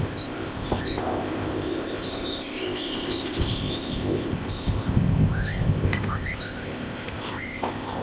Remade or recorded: remade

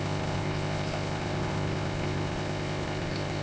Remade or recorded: remade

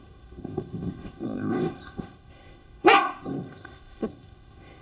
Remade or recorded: remade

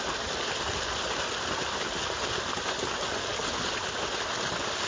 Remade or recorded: recorded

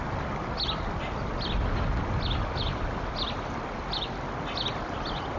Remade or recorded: recorded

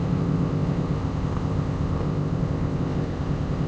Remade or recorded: remade